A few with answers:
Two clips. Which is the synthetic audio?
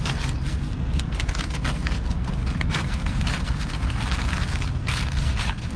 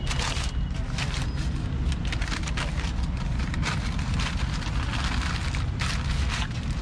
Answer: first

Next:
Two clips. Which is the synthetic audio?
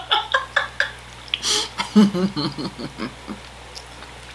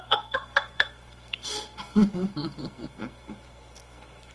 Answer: second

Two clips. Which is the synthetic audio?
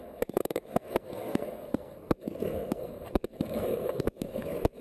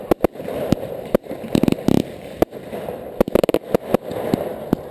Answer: first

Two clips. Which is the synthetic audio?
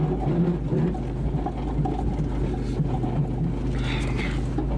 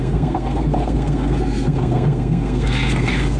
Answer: second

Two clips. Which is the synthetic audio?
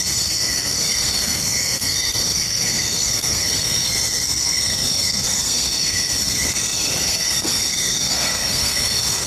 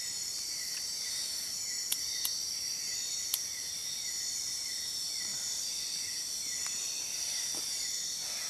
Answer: first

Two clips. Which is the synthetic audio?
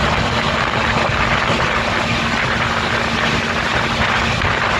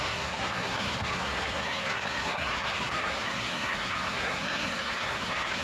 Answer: second